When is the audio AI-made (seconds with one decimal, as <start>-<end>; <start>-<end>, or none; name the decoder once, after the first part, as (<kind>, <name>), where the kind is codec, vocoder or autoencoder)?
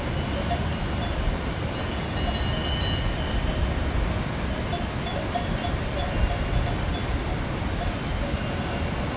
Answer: 0.7-1.3 (vocoder, BigVGAN v2); 5.1-5.7